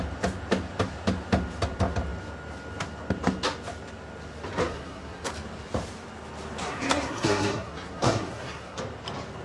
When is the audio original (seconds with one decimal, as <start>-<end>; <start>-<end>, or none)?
0.0-4.6; 5.3-6.6; 8.8-9.4